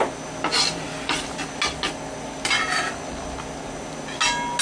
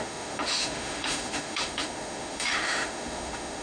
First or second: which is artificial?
second